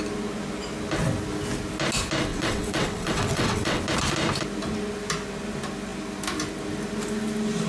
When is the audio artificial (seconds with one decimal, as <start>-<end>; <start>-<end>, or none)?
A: 2.3-3.8